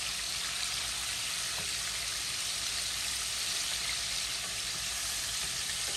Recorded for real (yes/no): no